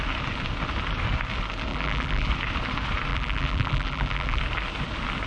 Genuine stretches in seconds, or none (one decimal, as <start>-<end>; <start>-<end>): 0.0-1.7; 2.3-3.1; 4.4-5.3